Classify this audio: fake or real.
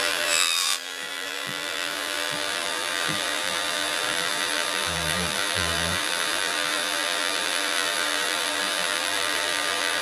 fake